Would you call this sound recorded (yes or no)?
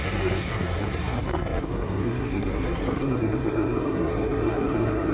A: no